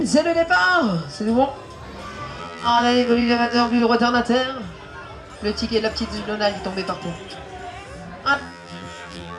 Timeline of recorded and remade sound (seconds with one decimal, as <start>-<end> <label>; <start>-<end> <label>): 0.0-2.4 recorded; 2.4-3.8 remade; 3.8-8.4 recorded; 8.4-9.4 remade